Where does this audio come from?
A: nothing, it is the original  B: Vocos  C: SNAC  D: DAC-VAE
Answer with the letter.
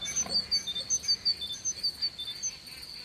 A